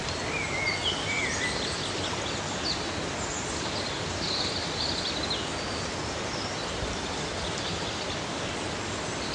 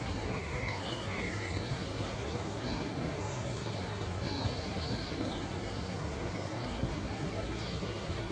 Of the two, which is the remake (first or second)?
second